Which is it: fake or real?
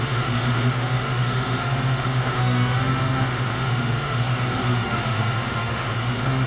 fake